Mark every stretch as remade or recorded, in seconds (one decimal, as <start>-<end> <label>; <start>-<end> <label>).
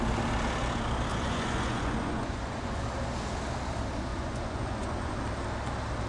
0.0-1.1 recorded; 1.1-2.8 remade; 2.8-4.1 recorded; 4.1-5.2 remade; 5.2-6.1 recorded